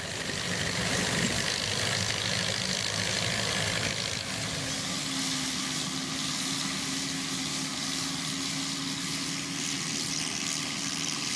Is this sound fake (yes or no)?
no